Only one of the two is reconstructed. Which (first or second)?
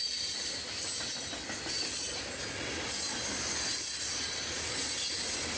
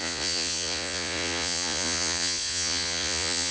second